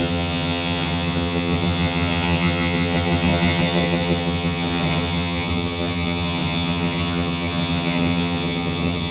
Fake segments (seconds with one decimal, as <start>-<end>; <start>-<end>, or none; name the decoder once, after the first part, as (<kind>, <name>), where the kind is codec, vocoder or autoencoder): 0.0-9.1 (vocoder, HiFi-GAN)